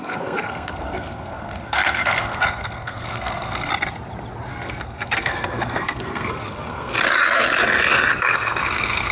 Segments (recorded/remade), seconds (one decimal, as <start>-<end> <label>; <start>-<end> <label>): 0.0-3.7 remade; 3.7-4.5 recorded; 4.5-6.9 remade; 6.9-8.1 recorded; 8.1-9.1 remade